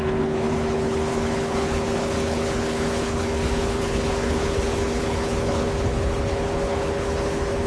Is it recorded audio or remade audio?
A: remade